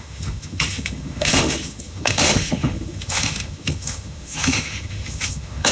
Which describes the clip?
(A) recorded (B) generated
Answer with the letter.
B